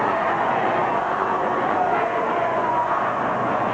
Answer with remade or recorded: remade